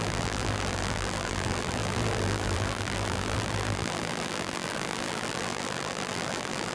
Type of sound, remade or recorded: remade